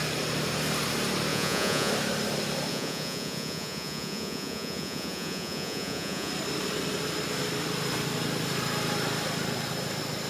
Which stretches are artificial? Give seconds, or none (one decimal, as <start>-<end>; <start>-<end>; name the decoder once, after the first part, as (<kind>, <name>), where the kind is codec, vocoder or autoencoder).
1.3-1.9 (vocoder, Vocos); 2.7-6.3

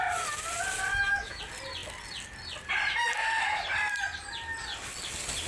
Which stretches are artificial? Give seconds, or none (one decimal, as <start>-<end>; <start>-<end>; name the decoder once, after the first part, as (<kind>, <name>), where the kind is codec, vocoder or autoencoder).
0.9-1.4 (autoencoder, DAC-VAE)